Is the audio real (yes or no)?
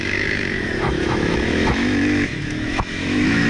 no